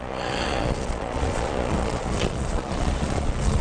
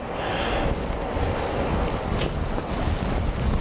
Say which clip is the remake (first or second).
first